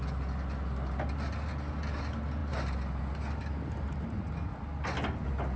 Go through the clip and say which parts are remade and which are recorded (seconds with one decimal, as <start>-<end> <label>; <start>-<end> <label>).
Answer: 0.0-5.6 recorded